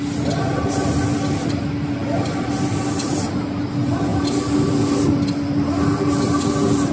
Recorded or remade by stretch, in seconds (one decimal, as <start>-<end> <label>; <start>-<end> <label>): 0.0-6.9 recorded